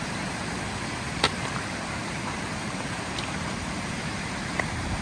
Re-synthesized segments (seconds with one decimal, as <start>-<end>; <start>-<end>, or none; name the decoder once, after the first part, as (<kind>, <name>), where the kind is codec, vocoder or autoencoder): 0.0-5.0 (vocoder, BigVGAN v2)